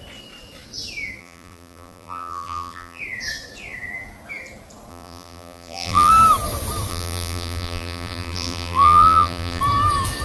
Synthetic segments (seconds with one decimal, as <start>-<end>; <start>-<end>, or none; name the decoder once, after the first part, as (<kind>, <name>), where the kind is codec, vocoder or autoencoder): 1.2-3.0 (vocoder, BigVGAN v2); 4.9-6.1; 6.9-9.6

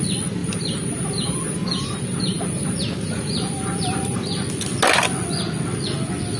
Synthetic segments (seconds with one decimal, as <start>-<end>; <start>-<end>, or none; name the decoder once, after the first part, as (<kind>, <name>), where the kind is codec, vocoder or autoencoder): 0.4-4.2 (vocoder, BigVGAN v2)

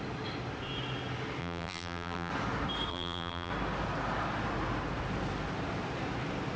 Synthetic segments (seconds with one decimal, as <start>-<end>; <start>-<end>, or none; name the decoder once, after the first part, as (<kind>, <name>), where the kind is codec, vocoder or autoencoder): 1.4-2.3 (vocoder, BigVGAN v2); 2.9-3.5

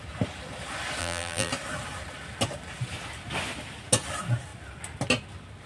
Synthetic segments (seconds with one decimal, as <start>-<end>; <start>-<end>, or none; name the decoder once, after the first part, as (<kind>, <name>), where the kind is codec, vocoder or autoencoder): 1.0-1.5 (vocoder, BigVGAN v2)

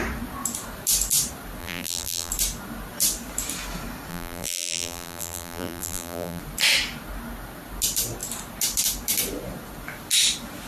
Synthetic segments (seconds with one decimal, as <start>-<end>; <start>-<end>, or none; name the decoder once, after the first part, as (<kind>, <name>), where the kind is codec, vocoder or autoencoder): 1.6-2.3 (vocoder, BigVGAN v2); 4.1-6.4

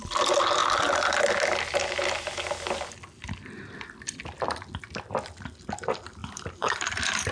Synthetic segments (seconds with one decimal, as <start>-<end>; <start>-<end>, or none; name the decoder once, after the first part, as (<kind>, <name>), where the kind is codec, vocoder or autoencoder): 6.2-7.3 (vocoder, BigVGAN v2)